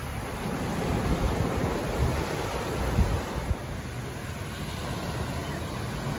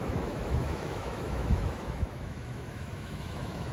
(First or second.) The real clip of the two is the first